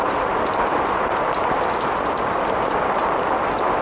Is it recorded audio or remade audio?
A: recorded